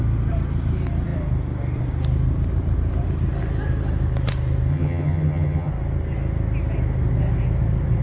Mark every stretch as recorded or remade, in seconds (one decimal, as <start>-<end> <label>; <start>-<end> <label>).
0.0-4.7 recorded; 4.7-5.7 remade; 5.7-8.0 recorded